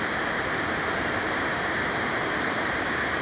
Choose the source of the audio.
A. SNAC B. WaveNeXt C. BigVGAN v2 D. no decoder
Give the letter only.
D